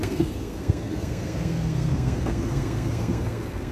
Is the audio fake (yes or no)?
yes